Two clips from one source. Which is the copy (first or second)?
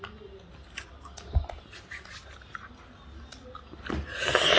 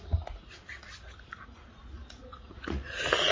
second